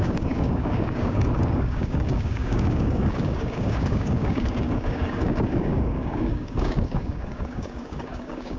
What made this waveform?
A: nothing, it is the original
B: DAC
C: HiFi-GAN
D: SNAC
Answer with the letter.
B